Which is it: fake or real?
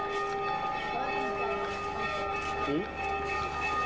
real